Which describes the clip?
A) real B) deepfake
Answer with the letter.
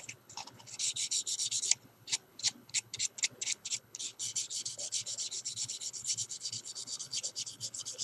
B